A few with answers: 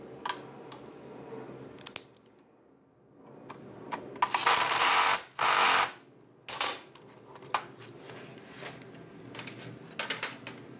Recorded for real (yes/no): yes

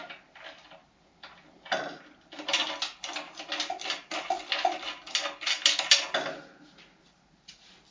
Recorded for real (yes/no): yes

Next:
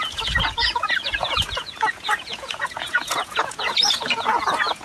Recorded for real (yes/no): no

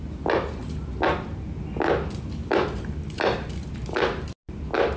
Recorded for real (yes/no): yes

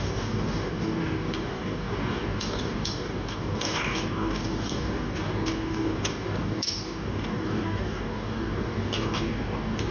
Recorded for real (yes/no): no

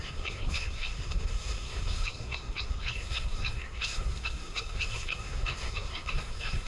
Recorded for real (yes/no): no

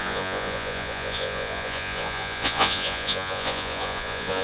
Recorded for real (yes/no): no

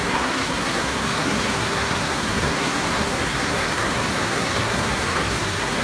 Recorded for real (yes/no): no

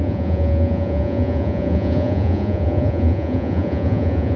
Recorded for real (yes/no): no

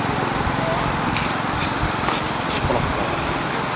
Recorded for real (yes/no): yes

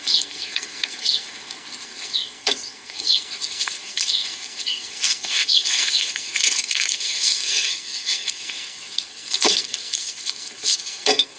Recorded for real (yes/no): no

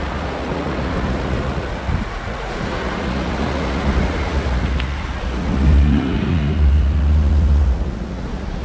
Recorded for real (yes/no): no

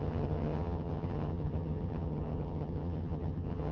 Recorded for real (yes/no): no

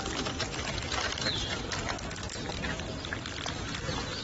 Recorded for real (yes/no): no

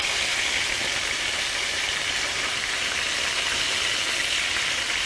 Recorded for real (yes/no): yes